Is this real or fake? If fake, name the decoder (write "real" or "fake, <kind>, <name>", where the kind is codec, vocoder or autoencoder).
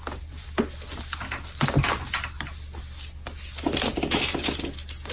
real